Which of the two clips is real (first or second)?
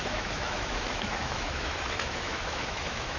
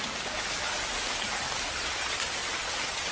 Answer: second